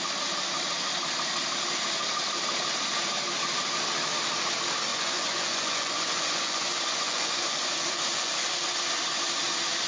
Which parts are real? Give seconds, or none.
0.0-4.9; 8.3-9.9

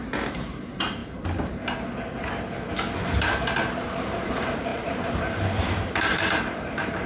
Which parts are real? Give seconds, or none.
1.0-4.3

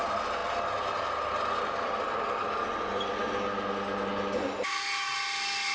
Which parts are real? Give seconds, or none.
0.0-5.7